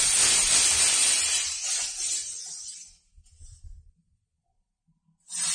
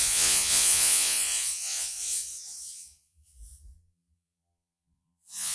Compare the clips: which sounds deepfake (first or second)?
second